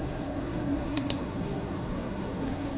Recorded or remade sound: remade